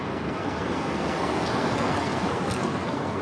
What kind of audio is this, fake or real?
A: fake